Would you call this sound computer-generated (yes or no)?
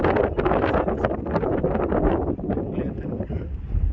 no